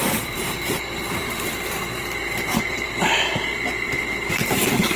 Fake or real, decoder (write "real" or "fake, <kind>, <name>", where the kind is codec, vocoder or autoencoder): fake, vocoder, BigVGAN v2